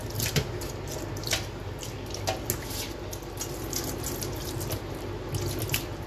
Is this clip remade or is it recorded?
recorded